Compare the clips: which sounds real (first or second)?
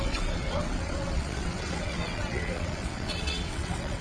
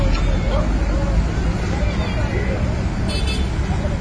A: second